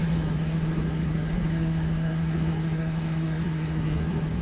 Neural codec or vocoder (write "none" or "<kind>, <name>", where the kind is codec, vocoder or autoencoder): codec, SNAC